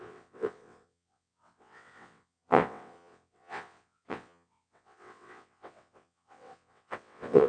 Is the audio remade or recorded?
remade